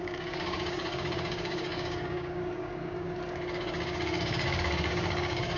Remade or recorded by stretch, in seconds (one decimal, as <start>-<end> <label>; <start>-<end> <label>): 0.0-5.6 remade